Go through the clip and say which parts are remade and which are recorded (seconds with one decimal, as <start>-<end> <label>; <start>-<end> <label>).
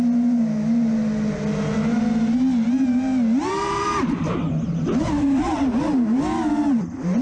0.0-7.2 recorded